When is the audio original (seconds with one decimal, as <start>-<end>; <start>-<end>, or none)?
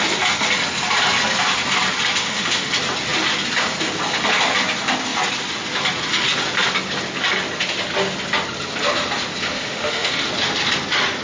0.0-2.2; 2.7-9.5; 10.3-11.2